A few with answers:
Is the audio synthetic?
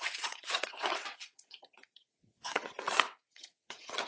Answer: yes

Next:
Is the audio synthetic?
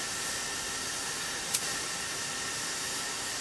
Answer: yes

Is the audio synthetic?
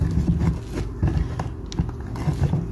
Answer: no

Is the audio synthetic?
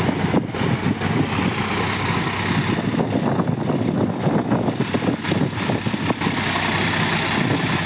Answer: no